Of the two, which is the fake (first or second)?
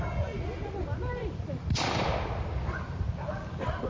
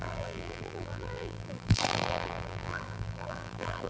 second